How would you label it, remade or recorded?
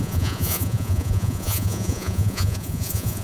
remade